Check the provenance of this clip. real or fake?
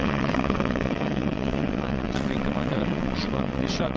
fake